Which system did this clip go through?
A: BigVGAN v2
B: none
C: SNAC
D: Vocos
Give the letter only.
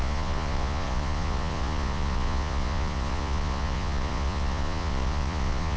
D